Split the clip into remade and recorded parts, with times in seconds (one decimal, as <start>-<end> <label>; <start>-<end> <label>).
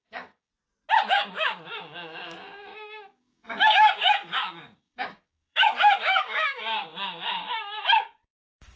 0.0-0.5 remade; 0.5-1.1 recorded; 1.1-8.8 remade